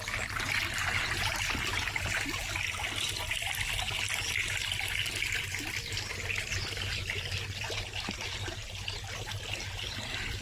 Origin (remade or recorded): recorded